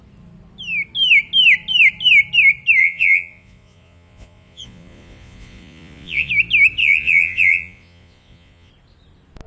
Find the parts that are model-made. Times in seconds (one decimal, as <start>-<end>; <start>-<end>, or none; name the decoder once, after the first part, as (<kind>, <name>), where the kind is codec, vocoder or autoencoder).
2.8-6.3 (vocoder, Vocos); 6.8-8.7